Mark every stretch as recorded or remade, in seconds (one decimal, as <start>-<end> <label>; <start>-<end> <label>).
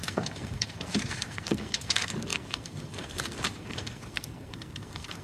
0.0-5.2 remade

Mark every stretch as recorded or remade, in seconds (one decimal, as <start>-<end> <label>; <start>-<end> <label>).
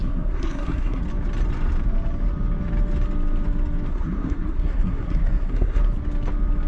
0.0-1.0 remade; 1.0-3.9 recorded; 3.9-5.8 remade; 5.8-6.7 recorded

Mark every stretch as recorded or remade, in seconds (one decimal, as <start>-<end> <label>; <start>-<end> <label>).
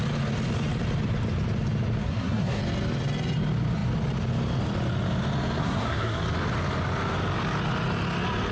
0.0-2.0 recorded; 2.0-2.6 remade; 2.6-5.6 recorded; 5.6-6.2 remade; 6.2-8.5 recorded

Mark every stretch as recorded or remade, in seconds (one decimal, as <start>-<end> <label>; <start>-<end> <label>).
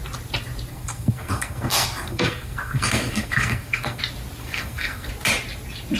0.0-0.7 recorded; 0.7-4.0 remade; 4.0-4.4 recorded; 4.4-5.1 remade; 5.1-6.0 recorded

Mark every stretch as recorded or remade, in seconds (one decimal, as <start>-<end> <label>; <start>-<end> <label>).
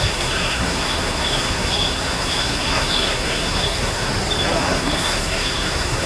0.0-4.1 remade; 4.1-4.6 recorded; 4.6-6.1 remade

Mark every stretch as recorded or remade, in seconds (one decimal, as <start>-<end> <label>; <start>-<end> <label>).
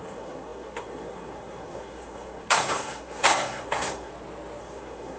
0.0-4.1 remade; 4.1-4.6 recorded; 4.6-5.2 remade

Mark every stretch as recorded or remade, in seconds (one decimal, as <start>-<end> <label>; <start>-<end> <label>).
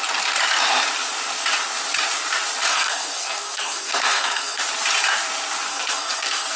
0.0-2.7 recorded; 2.7-4.6 remade; 4.6-5.7 recorded; 5.7-6.6 remade